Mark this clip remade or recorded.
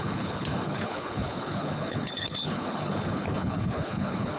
remade